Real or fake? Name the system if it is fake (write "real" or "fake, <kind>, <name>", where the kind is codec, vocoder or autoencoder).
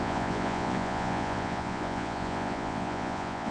fake, vocoder, Vocos